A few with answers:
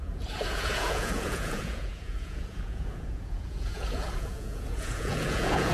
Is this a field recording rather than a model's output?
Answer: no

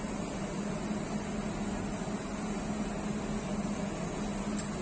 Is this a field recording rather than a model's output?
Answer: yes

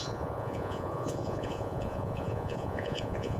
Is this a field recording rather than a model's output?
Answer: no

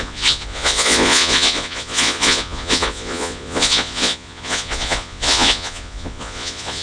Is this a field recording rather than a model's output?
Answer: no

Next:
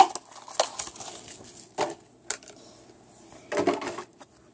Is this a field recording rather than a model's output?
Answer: yes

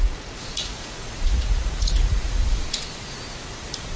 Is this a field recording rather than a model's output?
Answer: no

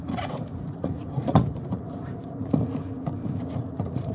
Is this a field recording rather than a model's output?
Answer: no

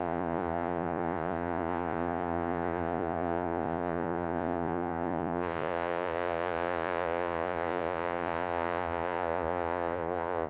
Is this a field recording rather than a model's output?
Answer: no